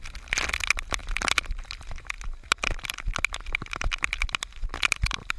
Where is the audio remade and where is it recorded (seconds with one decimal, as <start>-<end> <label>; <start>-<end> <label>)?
0.0-5.4 recorded